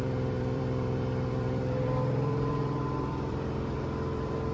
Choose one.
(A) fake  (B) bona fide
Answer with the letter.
A